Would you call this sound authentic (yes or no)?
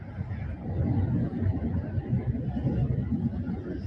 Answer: yes